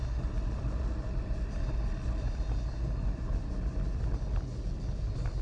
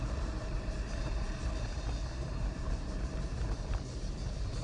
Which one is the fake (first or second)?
second